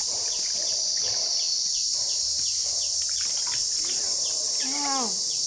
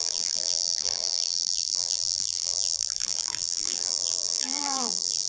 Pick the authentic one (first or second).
first